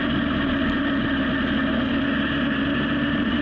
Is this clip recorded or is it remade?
remade